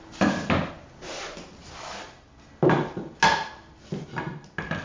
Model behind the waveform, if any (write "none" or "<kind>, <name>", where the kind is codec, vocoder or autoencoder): none